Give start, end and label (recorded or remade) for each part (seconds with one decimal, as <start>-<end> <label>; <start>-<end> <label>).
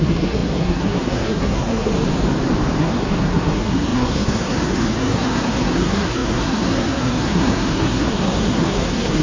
0.0-1.9 remade; 1.9-2.8 recorded; 2.8-9.2 remade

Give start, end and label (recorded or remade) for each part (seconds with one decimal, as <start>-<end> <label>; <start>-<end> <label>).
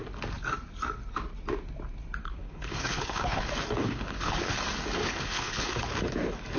0.0-2.2 recorded; 2.2-3.4 remade; 3.4-3.8 recorded; 3.8-4.5 remade; 4.5-5.0 recorded; 5.0-5.8 remade; 5.8-6.6 recorded